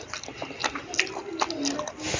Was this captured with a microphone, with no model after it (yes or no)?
yes